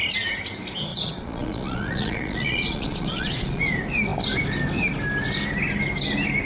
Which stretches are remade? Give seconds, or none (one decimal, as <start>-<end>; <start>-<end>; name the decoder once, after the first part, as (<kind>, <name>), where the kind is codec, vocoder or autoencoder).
0.9-3.6 (vocoder, Vocos)